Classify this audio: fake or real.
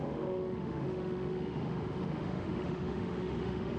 fake